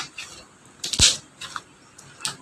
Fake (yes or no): no